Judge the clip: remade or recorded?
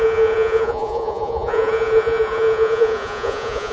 remade